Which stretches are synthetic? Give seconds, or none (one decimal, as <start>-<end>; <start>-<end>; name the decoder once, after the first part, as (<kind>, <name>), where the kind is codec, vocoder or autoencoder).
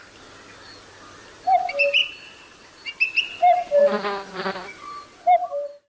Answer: none